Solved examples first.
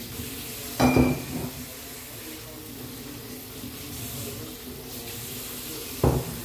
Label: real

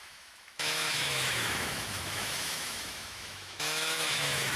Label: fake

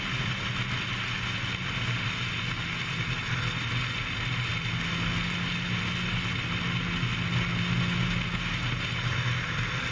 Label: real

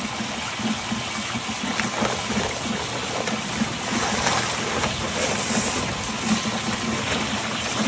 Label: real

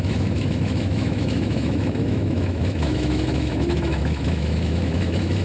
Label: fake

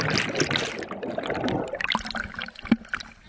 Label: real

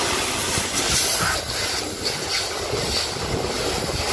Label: real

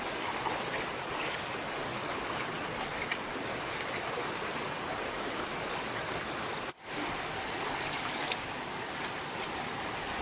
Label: real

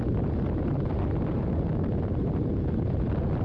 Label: real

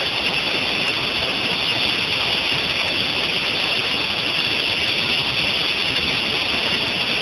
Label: real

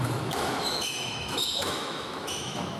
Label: fake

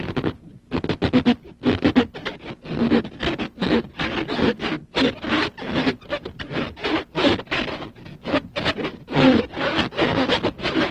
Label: real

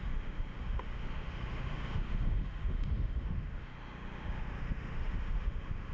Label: fake